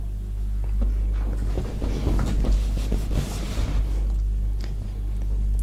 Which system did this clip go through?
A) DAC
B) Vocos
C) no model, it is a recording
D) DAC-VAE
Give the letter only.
C